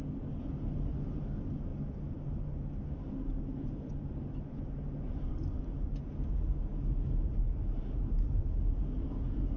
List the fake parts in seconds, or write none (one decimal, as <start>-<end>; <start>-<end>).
none